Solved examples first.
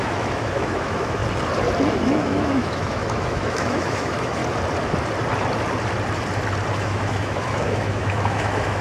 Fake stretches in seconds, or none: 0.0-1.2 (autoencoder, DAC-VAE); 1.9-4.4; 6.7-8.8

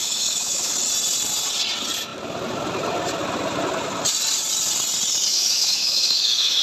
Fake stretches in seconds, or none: 0.0-0.7 (autoencoder, DAC-VAE); 5.3-6.6